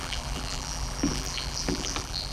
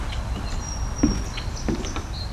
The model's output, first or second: first